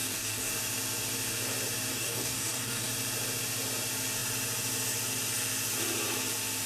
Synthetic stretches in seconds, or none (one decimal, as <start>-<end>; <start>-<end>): 0.0-0.5; 1.9-2.9